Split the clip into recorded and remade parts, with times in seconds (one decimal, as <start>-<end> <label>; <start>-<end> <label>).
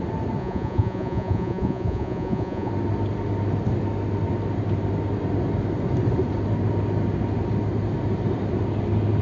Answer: 0.0-0.4 recorded; 0.4-2.7 remade; 2.7-9.2 recorded